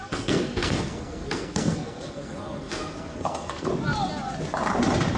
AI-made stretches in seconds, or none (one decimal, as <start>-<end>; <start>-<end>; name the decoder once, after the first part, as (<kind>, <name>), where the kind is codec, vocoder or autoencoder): 0.0-3.7 (codec, SNAC)

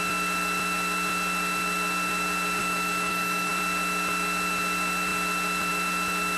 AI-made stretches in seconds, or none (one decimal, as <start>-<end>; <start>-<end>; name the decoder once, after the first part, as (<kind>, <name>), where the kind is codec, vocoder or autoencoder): 2.6-3.5 (autoencoder, DAC-VAE)